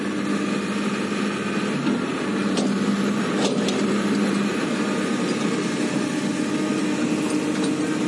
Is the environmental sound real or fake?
real